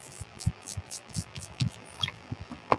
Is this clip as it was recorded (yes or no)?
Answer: no